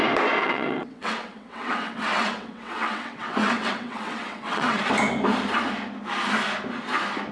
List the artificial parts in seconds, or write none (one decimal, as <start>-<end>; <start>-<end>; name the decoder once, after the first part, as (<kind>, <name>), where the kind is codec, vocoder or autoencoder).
0.4-4.8 (vocoder, WaveNeXt)

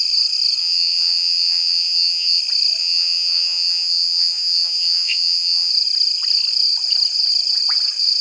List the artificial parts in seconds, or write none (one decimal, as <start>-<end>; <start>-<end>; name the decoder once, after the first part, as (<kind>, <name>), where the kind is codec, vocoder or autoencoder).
0.6-2.4 (vocoder, WaveNeXt); 2.8-5.7

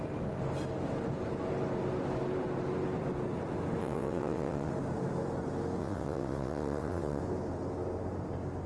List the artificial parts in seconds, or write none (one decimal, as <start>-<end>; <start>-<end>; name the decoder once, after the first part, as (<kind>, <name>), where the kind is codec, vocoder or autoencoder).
3.8-4.7 (vocoder, WaveNeXt); 5.8-7.2

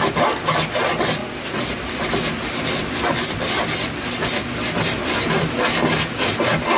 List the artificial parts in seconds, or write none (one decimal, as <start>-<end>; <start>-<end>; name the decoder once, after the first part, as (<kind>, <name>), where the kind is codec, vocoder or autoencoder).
none

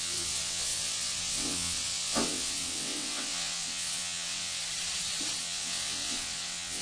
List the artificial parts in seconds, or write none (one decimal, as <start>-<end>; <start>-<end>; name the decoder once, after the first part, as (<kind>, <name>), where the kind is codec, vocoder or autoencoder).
0.0-4.6 (vocoder, WaveNeXt); 5.4-6.8

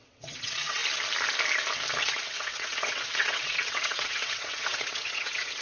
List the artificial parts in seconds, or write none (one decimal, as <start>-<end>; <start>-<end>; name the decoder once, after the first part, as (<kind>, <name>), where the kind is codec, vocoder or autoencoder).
0.0-0.8 (vocoder, WaveNeXt); 2.0-5.6